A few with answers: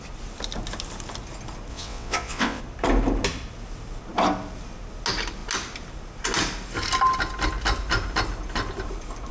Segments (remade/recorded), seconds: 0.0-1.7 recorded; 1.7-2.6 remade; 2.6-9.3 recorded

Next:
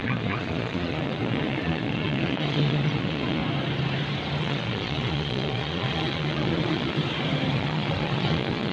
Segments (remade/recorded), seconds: 0.0-3.4 remade; 3.4-4.4 recorded; 4.4-7.0 remade; 7.0-7.5 recorded; 7.5-8.7 remade

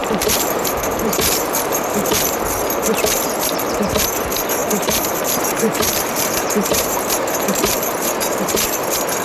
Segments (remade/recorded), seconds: 0.0-2.4 remade; 2.4-4.6 recorded; 4.6-8.3 remade; 8.3-9.2 recorded

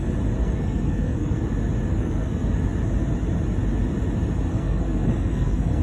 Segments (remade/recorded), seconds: 0.0-0.4 recorded; 0.4-1.4 remade; 1.4-1.9 recorded; 1.9-2.6 remade; 2.6-4.5 recorded; 4.5-5.8 remade

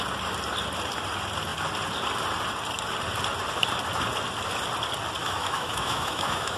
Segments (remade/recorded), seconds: 0.0-5.2 recorded; 5.2-6.6 remade